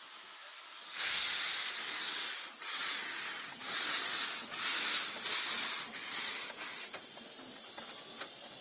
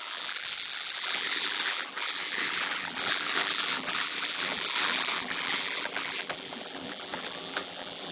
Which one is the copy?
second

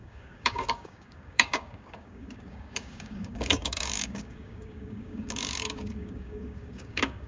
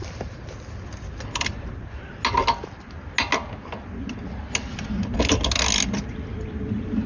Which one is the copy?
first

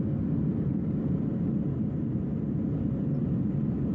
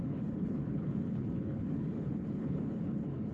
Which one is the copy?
second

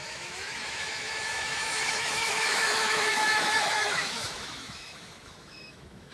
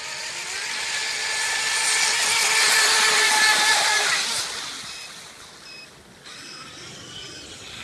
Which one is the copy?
first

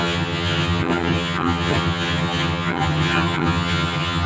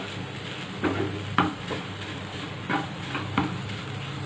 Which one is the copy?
first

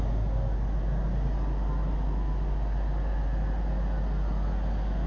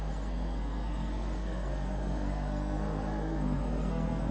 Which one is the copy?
second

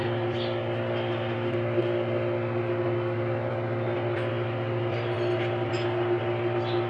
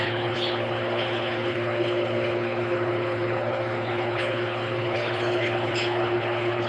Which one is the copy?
second